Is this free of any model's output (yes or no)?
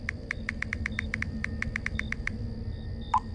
no